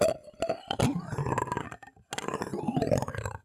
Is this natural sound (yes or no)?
yes